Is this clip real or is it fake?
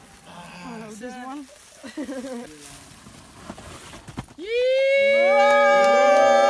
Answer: real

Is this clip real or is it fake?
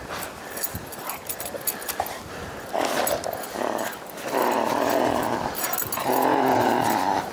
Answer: real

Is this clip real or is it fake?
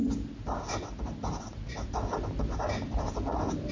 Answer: real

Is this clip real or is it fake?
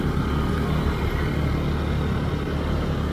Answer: real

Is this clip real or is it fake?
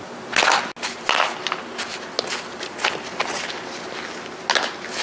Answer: real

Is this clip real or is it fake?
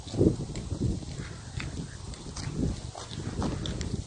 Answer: real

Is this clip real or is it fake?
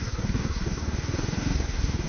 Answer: fake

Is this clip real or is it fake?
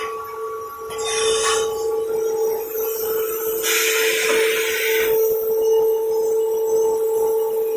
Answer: real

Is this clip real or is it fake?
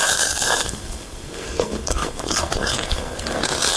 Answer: fake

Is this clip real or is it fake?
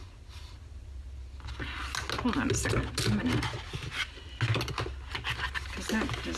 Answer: real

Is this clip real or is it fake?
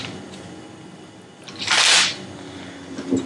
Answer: real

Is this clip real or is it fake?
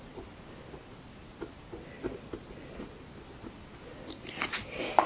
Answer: real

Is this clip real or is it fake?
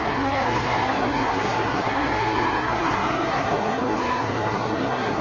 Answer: fake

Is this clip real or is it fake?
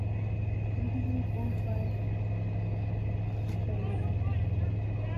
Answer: real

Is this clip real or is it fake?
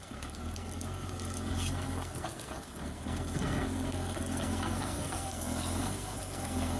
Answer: fake